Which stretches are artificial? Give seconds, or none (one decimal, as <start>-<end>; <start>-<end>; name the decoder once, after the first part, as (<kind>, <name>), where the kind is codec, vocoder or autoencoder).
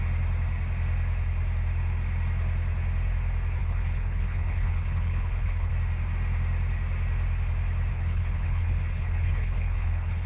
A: 3.6-5.7 (codec, HILCodec); 7.9-10.3